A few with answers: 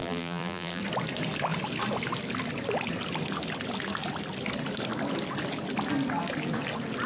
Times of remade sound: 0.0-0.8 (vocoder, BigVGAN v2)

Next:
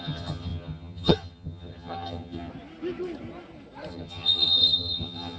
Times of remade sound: 0.0-2.5 (vocoder, HiFi-GAN); 3.9-5.4

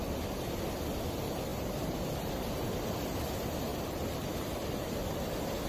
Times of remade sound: 1.5-2.3 (vocoder, BigVGAN v2); 3.7-4.9

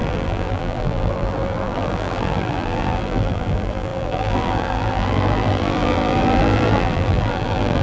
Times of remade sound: 0.0-7.8 (vocoder, BigVGAN v2)

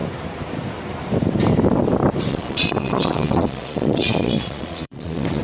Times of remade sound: 2.3-5.4 (vocoder, Vocos)

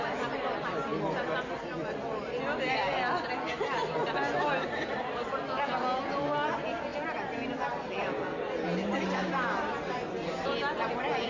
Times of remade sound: none

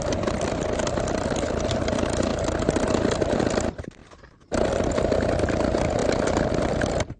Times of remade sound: 0.0-2.3 (vocoder, BigVGAN v2); 3.6-4.0; 4.7-7.2